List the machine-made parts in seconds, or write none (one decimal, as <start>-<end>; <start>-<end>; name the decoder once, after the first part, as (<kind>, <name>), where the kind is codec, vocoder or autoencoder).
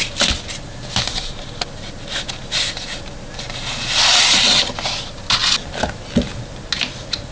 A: none